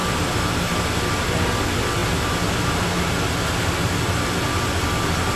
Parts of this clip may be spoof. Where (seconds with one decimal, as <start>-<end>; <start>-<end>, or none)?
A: none

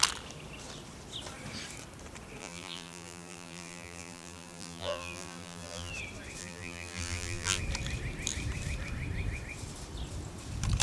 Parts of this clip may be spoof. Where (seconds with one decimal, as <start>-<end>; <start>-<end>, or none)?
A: 2.4-5.9; 6.4-7.6

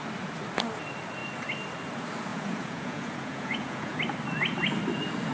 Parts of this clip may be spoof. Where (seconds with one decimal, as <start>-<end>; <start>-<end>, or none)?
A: 2.3-4.0

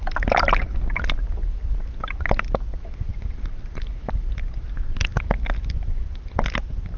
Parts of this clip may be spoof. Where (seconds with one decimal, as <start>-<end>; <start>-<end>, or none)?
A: none

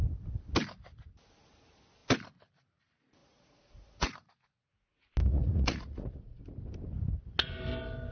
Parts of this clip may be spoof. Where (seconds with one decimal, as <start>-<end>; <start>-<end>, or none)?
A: 3.2-4.3; 5.2-6.4

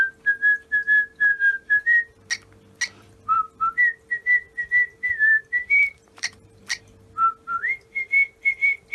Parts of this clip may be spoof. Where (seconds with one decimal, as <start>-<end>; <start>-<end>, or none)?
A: 1.3-2.3; 5.3-6.8

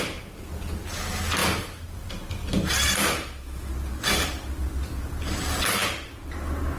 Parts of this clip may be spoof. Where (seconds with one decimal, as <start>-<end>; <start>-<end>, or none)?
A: 3.0-3.7